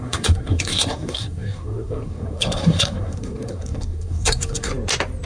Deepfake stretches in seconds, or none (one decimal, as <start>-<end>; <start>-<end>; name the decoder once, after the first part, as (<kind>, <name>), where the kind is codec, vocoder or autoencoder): 0.0-4.7 (codec, SNAC)